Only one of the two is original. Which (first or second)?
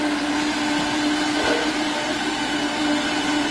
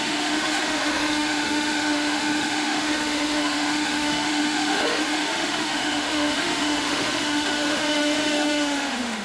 first